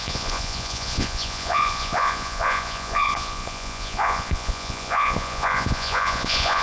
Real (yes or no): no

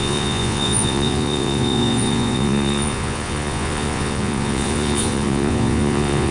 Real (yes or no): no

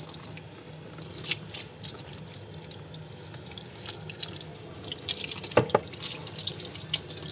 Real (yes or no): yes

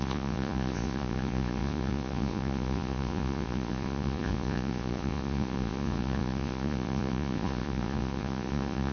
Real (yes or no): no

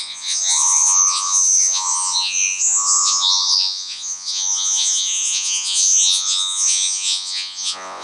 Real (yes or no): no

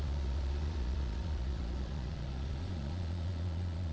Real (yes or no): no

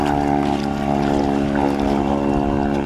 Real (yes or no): yes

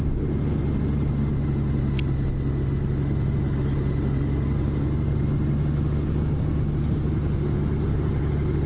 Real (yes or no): yes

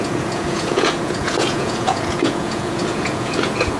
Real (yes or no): no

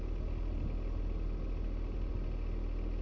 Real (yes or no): yes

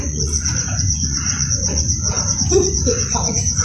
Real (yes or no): no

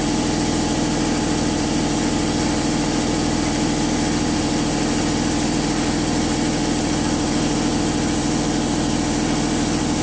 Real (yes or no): yes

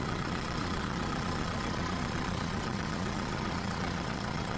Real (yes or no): no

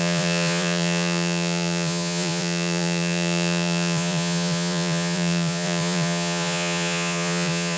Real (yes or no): no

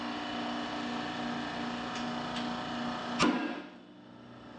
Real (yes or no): yes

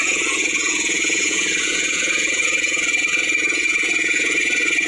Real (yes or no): no